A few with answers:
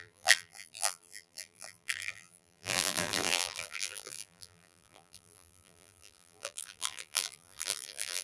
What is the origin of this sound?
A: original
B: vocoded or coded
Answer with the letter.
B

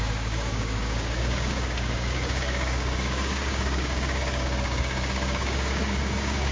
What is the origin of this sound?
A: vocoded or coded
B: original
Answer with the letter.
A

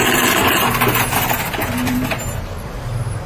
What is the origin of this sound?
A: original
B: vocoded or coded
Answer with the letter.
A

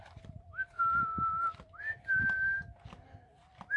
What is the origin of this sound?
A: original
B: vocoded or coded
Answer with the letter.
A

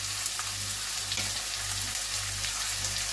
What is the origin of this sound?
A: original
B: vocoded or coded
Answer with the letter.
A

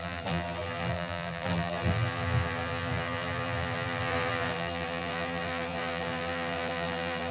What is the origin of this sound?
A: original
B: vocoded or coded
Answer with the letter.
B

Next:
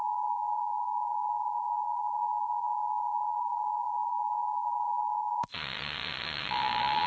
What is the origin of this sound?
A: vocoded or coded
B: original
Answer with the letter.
A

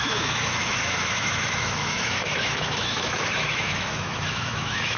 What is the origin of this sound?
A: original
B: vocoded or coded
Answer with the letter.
B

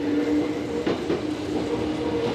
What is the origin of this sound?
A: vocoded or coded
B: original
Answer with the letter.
B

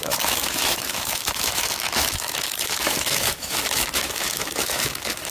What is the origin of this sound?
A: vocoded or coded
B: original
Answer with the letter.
A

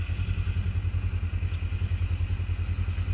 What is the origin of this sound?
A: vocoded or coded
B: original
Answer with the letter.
B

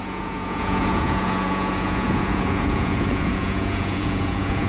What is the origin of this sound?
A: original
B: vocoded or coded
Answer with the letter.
B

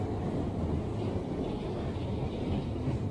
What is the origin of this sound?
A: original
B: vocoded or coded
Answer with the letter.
A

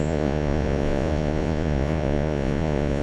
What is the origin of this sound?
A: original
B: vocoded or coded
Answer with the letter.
B